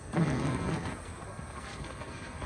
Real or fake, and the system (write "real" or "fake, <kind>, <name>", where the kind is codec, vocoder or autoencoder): fake, codec, SNAC